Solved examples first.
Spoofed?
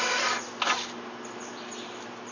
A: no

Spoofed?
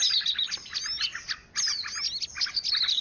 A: no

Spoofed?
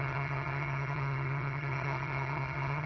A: yes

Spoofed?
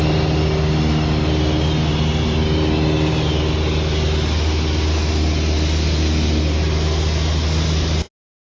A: no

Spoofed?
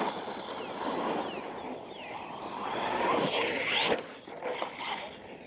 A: no